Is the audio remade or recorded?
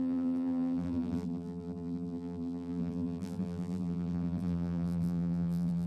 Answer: remade